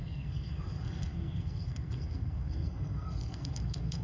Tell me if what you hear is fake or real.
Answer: fake